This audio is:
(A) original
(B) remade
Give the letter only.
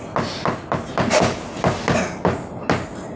A